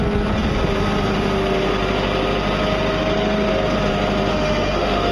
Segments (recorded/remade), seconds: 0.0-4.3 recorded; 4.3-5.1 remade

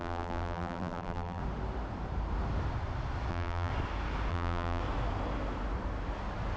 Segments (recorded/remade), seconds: 0.0-1.4 remade; 1.4-3.3 recorded; 3.3-3.7 remade; 3.7-4.3 recorded; 4.3-4.8 remade; 4.8-6.6 recorded